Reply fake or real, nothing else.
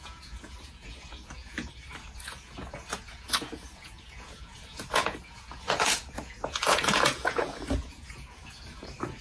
fake